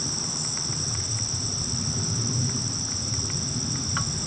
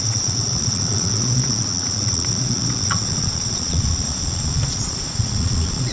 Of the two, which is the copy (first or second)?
second